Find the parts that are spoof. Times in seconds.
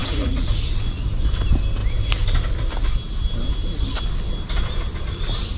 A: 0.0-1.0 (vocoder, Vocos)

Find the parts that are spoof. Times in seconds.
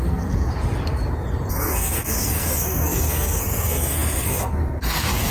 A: 0.0-0.5 (codec, SNAC); 1.5-5.3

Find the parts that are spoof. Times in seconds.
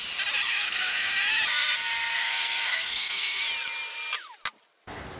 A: 0.5-1.1 (codec, SNAC); 2.2-3.4